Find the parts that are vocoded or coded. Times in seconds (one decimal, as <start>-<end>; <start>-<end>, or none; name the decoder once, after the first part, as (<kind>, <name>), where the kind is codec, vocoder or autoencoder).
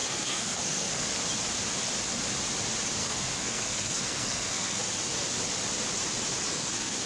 0.0-1.1 (codec, SNAC); 3.0-4.8; 6.5-7.1